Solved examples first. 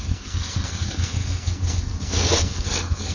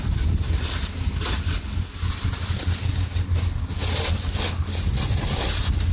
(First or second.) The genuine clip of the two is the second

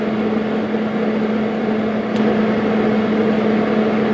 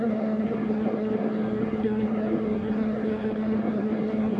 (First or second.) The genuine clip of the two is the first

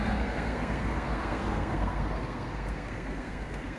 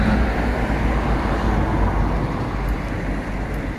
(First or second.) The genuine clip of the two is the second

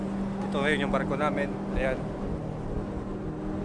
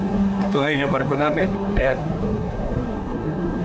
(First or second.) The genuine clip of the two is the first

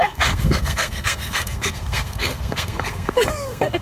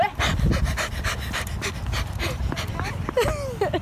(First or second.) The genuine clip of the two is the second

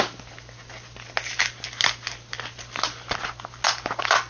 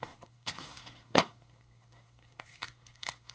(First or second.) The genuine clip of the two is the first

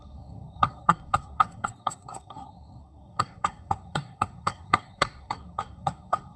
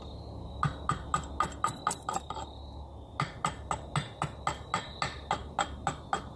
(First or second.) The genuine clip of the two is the second